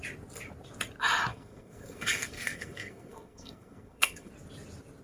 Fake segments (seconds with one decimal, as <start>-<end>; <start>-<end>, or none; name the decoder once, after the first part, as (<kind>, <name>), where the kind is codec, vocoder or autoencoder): 1.3-4.3 (codec, SNAC)